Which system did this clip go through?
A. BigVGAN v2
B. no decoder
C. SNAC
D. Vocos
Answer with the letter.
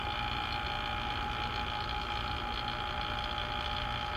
B